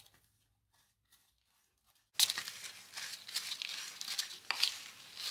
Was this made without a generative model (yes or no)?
yes